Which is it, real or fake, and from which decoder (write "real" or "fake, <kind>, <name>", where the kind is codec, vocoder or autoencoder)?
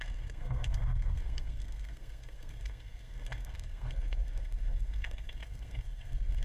fake, codec, SNAC